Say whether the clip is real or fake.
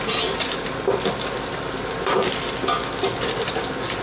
real